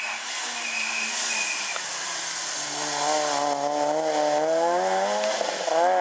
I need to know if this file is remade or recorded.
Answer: recorded